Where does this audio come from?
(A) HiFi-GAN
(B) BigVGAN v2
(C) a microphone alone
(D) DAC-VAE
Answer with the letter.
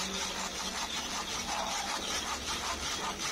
C